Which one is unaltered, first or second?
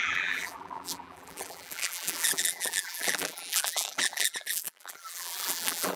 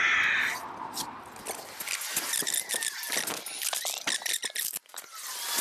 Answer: second